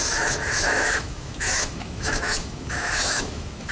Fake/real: fake